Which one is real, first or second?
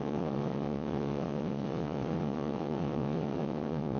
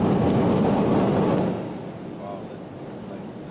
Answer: second